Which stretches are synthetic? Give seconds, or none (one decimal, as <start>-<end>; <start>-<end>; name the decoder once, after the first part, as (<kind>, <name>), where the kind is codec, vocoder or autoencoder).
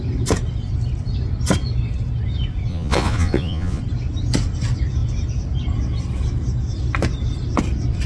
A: 2.7-3.8 (vocoder, Vocos)